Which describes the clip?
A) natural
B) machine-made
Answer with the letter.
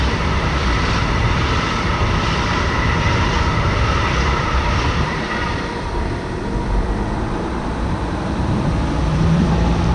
B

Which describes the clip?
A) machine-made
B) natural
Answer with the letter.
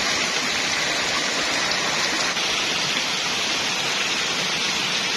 B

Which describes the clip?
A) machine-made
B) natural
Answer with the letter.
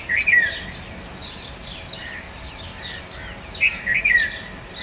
B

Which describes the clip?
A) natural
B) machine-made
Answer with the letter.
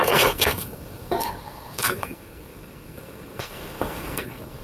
B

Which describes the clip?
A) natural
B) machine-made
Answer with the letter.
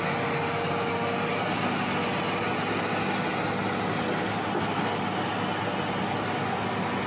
A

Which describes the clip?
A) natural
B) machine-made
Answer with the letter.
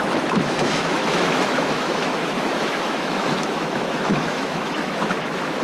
B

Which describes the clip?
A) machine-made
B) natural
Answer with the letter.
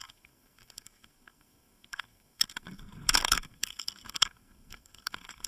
A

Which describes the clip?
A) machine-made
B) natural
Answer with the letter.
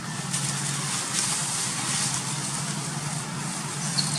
B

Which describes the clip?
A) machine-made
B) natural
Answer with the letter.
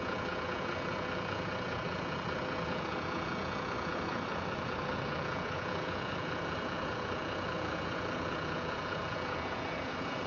A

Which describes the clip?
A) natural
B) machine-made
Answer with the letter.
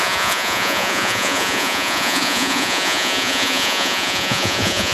B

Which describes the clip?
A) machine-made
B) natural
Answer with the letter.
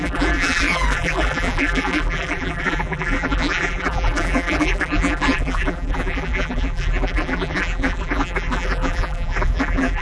A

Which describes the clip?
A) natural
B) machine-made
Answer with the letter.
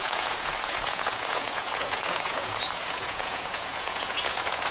B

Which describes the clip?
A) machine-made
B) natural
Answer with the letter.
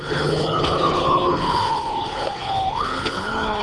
A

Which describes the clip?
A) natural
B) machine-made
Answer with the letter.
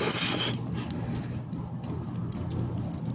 A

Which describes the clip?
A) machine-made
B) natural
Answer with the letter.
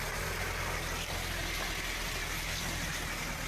B